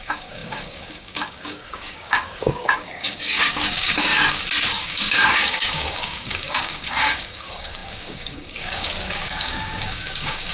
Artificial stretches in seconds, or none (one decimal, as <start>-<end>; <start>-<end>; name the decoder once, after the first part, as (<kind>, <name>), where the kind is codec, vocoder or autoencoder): 0.0-4.1 (codec, DAC); 4.8-10.5